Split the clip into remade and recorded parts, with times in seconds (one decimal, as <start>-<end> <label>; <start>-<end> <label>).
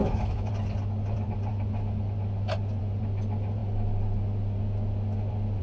0.0-0.5 remade; 0.5-5.6 recorded